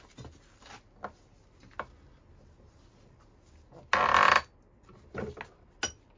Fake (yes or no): no